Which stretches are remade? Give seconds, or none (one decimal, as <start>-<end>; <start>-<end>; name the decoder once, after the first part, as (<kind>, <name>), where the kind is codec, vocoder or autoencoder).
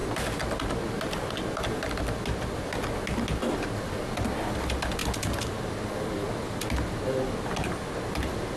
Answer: none